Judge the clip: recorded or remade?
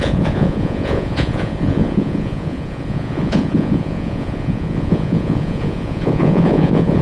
remade